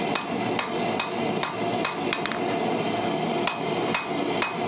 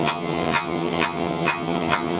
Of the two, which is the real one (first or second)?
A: first